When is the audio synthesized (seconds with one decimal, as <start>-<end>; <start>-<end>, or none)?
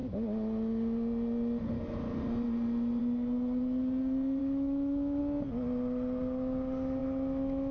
4.4-5.2